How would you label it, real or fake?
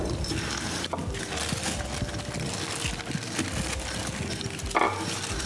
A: real